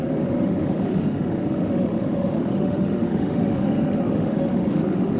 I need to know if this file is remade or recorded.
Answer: remade